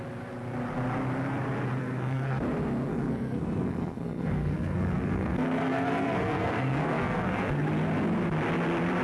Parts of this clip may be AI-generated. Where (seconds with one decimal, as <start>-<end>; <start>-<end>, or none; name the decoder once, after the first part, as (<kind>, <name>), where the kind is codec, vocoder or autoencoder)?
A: 1.8-2.4 (codec, SNAC); 2.9-7.5